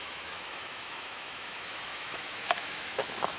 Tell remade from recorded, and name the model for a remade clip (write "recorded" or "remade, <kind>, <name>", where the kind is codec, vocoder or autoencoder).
remade, autoencoder, DAC-VAE